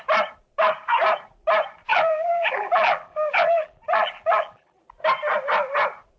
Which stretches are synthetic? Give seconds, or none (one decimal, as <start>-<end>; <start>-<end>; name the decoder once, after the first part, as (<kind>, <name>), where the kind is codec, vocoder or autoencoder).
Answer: 1.9-4.8 (vocoder, BigVGAN v2)